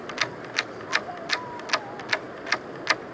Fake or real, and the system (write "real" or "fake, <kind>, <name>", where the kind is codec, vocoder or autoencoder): real